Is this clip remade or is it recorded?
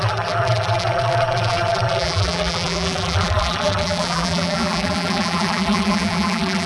remade